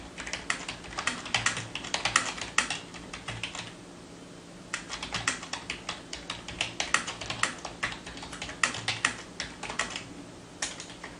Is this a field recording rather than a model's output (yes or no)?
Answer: yes